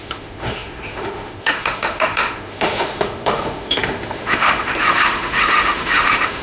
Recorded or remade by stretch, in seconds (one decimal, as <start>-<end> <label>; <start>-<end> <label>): 0.0-6.4 remade